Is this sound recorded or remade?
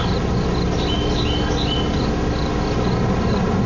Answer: recorded